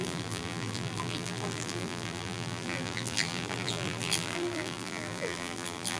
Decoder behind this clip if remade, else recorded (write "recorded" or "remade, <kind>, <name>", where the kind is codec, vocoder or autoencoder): remade, vocoder, BigVGAN v2